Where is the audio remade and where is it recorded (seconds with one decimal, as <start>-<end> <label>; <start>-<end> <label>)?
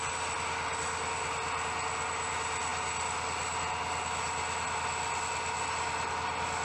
0.0-6.6 recorded